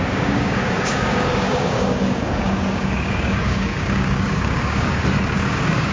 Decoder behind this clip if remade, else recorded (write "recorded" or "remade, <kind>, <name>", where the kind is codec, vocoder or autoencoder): remade, codec, DAC